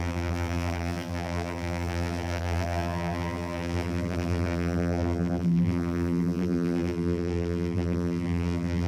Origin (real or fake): fake